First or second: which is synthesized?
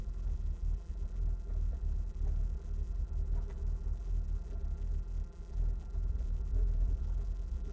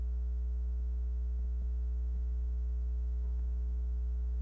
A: first